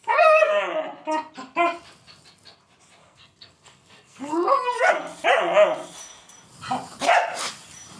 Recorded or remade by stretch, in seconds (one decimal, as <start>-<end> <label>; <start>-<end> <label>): 0.0-0.6 remade; 0.6-3.0 recorded; 3.0-4.9 remade; 4.9-8.0 recorded